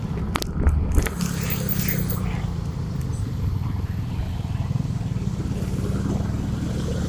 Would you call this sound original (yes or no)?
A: yes